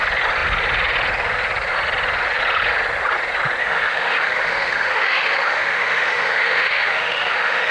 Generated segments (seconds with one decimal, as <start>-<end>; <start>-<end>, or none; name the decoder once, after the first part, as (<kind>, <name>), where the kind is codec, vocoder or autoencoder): 3.6-7.7 (autoencoder, DAC-VAE)